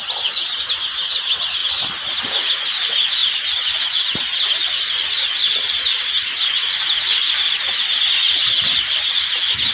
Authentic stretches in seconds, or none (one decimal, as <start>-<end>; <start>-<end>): 0.0-9.7